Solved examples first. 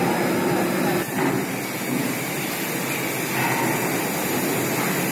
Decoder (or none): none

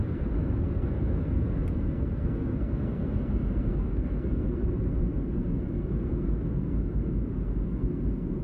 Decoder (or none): codec, SNAC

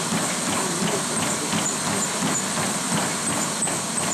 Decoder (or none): none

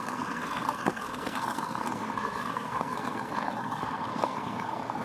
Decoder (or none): codec, SNAC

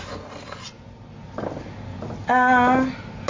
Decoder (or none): none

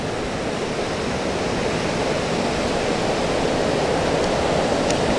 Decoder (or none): none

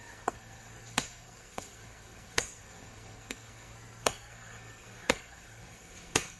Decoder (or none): codec, SNAC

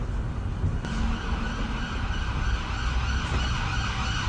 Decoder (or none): none